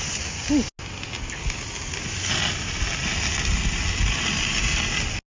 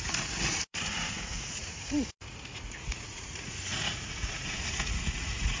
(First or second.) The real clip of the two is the first